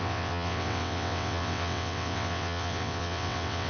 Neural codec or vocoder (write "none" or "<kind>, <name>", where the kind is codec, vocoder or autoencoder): vocoder, WaveNeXt